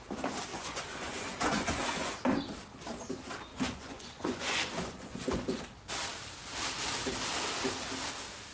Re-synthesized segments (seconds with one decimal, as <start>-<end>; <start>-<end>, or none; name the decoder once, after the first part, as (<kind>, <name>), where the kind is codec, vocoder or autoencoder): 0.5-2.1 (vocoder, Vocos); 3.5-5.6